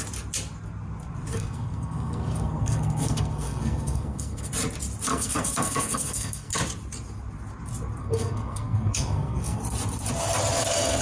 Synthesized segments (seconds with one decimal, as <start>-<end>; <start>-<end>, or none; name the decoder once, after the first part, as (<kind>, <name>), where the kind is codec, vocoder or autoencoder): 1.3-4.5 (codec, SNAC); 5.1-6.5; 8.0-9.6